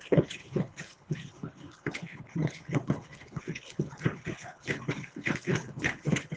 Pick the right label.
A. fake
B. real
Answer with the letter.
A